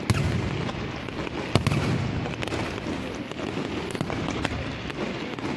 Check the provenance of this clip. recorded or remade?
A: recorded